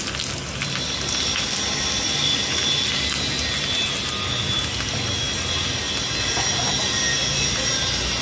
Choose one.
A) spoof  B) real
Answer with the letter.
B